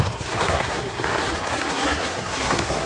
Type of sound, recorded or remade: remade